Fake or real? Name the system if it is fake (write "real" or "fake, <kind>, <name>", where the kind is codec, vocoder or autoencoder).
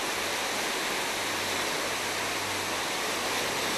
real